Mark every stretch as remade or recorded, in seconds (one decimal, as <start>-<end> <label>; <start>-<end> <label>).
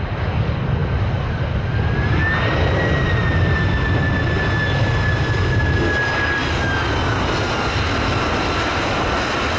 0.0-9.6 recorded